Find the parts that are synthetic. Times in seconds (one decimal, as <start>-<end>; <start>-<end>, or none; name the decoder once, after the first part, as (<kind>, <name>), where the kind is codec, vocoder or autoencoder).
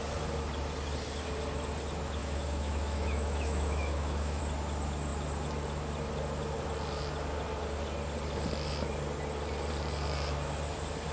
2.2-4.4 (autoencoder, DAC-VAE)